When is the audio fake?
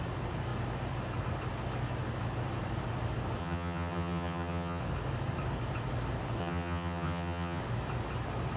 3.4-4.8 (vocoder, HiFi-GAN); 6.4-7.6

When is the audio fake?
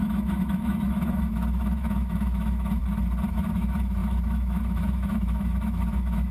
0.0-2.8 (autoencoder, DAC-VAE); 3.3-6.3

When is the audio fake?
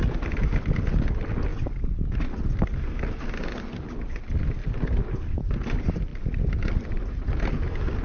none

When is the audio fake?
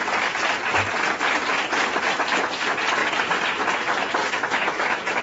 4.2-5.2 (autoencoder, DAC-VAE)